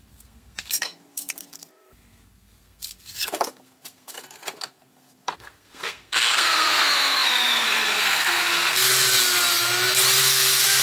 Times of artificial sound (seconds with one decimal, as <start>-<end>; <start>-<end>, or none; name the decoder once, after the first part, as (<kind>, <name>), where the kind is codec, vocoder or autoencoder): 0.0-8.9 (codec, SNAC); 10.2-10.8